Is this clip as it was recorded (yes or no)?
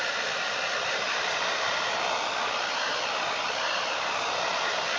yes